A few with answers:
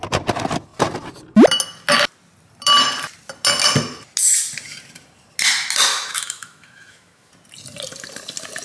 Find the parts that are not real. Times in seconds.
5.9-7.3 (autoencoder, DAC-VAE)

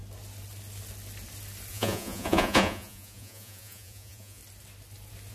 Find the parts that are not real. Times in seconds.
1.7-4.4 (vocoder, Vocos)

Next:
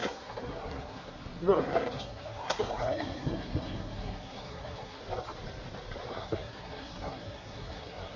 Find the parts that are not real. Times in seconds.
0.0-5.0 (codec, SNAC); 6.1-8.2

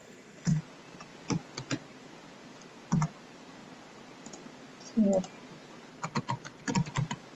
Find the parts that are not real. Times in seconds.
0.0-0.6 (codec, SNAC)

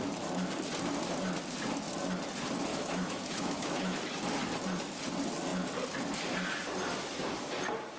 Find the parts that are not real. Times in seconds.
2.7-4.0 (autoencoder, DAC-VAE)

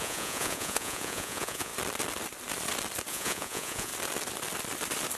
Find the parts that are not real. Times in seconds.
0.0-1.7 (vocoder, Vocos); 3.1-3.9